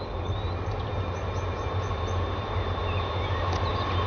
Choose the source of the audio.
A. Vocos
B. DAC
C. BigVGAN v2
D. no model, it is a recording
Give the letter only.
D